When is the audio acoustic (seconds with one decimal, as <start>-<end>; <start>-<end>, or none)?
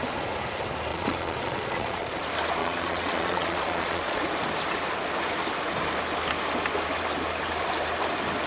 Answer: 0.0-0.9; 2.2-2.6; 4.2-8.5